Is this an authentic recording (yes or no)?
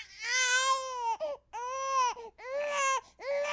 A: yes